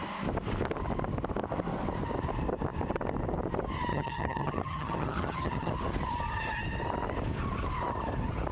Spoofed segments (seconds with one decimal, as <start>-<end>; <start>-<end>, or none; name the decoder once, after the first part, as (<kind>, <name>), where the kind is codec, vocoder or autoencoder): 3.9-5.7 (vocoder, HiFi-GAN)